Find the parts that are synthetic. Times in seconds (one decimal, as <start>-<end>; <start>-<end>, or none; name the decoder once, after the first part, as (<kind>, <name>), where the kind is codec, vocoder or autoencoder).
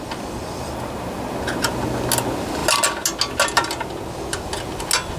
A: none